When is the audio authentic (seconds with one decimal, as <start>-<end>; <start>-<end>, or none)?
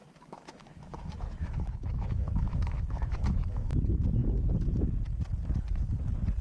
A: 3.7-6.4